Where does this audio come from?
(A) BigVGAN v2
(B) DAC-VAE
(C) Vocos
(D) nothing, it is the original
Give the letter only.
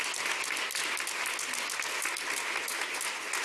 D